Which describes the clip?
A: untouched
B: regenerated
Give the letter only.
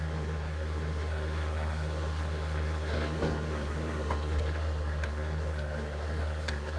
B